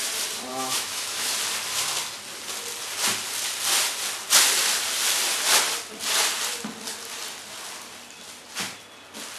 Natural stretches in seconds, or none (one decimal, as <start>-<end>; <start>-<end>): 0.0-0.5; 1.3-9.4